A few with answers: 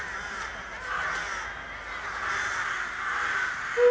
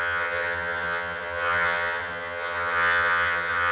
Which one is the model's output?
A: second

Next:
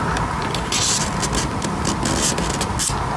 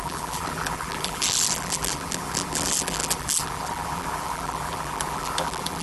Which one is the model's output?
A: second